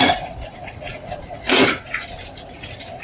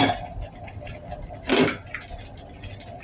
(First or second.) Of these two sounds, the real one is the second